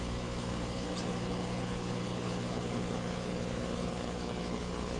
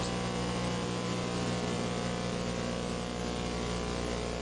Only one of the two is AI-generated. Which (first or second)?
first